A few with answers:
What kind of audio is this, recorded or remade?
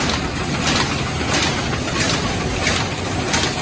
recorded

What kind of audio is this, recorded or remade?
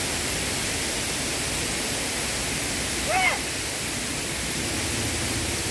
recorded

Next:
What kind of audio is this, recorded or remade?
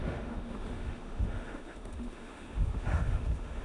remade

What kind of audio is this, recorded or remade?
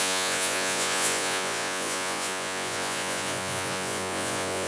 remade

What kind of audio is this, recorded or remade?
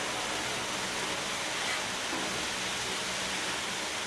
recorded